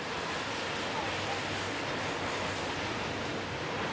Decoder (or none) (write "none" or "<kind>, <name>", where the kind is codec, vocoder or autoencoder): none